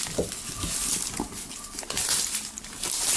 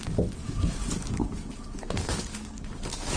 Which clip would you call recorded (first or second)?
first